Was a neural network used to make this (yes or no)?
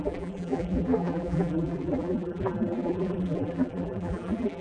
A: yes